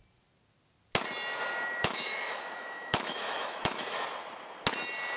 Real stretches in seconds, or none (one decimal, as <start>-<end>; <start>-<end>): 0.0-1.8; 4.1-5.2